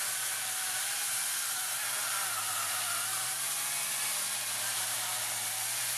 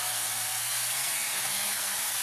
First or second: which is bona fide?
first